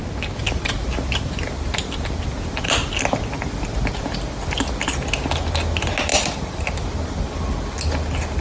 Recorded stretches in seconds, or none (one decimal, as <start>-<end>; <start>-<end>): 0.0-8.4